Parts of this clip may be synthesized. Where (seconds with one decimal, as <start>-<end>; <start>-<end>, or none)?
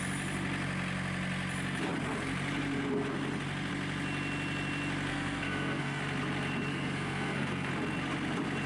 5.1-6.0; 6.7-7.7